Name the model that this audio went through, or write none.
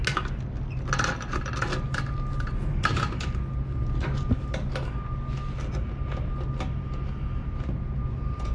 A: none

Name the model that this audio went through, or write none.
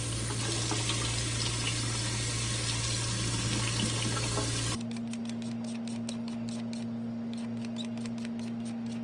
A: none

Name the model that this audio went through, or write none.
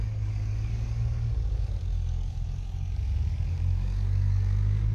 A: codec, DAC